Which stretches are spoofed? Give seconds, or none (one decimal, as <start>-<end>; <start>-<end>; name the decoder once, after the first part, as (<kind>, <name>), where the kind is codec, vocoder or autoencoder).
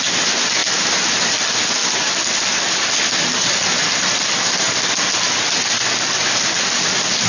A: 0.6-1.3 (vocoder, BigVGAN v2)